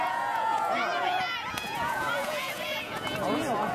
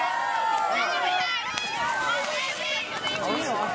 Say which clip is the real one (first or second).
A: second